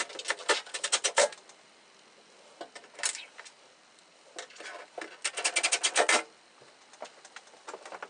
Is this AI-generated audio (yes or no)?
no